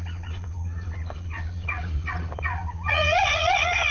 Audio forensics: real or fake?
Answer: fake